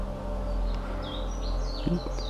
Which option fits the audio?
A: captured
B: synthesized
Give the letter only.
A